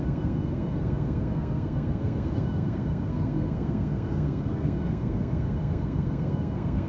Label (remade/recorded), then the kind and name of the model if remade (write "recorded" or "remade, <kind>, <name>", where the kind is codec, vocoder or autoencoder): remade, codec, SNAC